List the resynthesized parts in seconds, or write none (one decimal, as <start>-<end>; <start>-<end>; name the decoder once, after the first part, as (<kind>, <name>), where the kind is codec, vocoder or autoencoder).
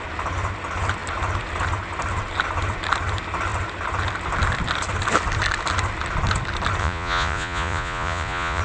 6.8-8.6 (vocoder, Vocos)